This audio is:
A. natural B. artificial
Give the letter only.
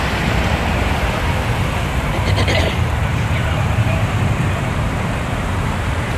B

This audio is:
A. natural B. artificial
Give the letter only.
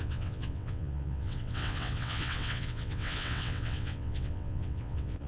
B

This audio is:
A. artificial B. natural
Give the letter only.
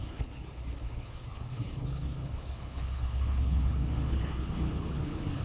A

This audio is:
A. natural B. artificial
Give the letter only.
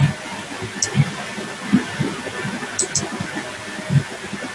A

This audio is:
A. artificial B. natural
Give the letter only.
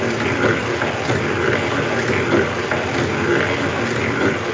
B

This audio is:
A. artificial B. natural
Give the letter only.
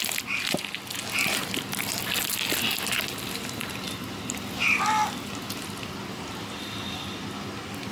B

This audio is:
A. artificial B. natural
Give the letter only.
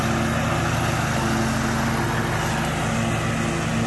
B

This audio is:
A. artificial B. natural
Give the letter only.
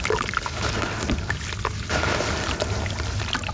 B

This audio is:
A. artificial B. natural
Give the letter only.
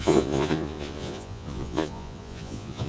A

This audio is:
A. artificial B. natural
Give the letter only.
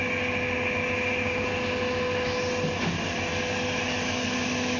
B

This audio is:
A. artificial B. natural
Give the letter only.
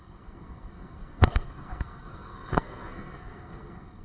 A